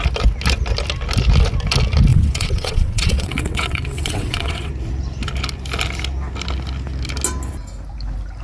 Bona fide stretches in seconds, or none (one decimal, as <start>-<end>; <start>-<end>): 0.0-2.1; 4.7-8.4